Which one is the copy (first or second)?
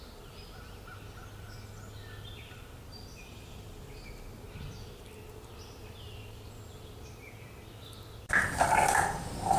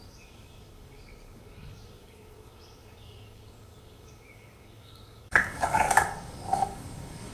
second